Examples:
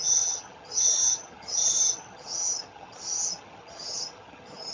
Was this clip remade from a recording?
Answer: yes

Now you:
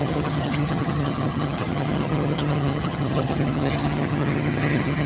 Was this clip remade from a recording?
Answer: yes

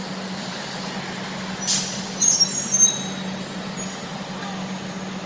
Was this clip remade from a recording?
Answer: no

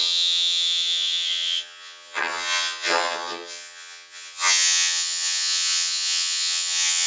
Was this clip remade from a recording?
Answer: yes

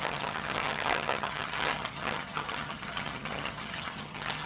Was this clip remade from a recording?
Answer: yes